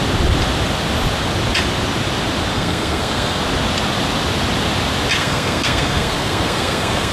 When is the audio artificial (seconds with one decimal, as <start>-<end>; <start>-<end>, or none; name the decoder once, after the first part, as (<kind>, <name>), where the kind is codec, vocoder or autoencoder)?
2.5-3.4 (codec, SNAC); 5.2-7.1